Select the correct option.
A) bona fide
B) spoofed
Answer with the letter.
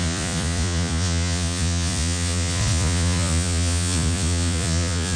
B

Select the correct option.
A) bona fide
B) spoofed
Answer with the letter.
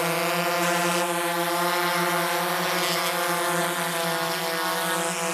A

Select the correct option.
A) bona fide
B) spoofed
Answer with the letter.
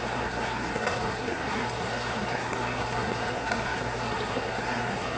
B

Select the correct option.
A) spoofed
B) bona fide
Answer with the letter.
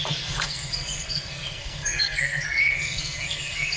A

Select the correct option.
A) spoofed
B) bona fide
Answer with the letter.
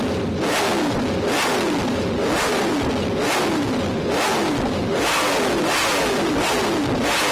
B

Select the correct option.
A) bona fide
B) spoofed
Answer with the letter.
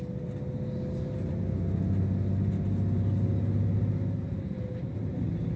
A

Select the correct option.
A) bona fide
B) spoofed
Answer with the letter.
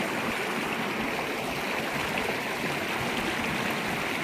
A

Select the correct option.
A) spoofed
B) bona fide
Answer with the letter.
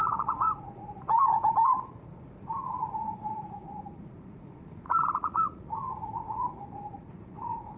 A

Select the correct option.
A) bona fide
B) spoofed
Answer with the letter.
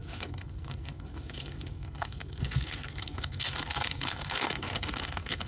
B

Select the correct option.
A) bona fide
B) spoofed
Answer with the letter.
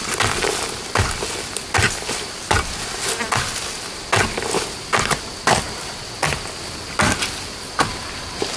A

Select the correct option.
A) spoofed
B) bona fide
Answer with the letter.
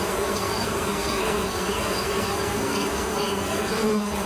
A